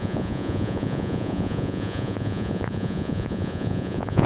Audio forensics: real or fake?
fake